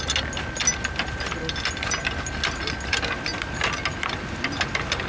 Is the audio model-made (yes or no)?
no